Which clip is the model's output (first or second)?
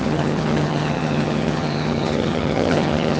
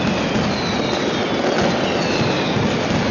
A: first